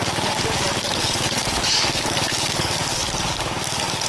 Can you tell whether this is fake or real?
fake